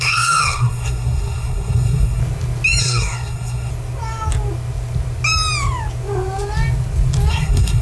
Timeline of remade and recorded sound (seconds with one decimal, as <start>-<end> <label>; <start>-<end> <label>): 0.0-2.2 remade; 2.2-2.8 recorded; 2.8-3.7 remade; 3.7-7.3 recorded; 7.3-7.8 remade